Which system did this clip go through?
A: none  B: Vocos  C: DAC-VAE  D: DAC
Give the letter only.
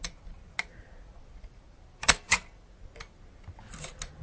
A